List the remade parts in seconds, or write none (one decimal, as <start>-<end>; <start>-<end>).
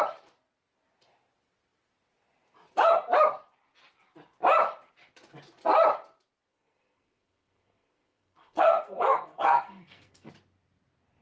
6.5-10.3